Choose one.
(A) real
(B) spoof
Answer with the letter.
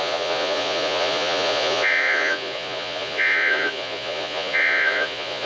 B